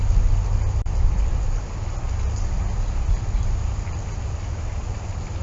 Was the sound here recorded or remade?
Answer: recorded